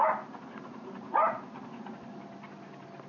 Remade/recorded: recorded